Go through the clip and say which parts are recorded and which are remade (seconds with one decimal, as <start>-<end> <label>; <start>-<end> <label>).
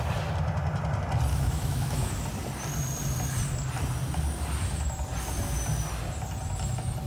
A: 0.0-1.3 recorded; 1.3-2.1 remade; 2.1-7.1 recorded